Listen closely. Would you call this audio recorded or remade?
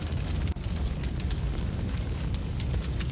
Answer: remade